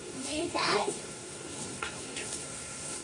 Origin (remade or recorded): remade